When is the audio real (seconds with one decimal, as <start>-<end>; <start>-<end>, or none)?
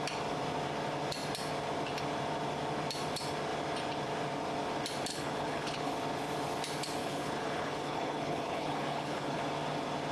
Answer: 0.0-5.1; 5.9-7.0; 9.4-10.1